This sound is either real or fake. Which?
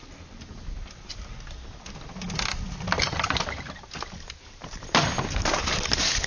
real